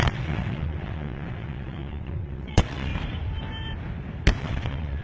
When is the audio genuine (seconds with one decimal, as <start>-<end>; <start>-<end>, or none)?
2.9-4.4